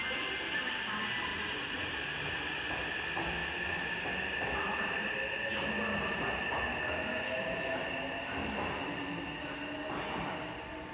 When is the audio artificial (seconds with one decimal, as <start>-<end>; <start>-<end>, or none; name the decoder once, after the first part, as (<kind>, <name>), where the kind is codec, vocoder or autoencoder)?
1.3-1.9 (vocoder, Vocos)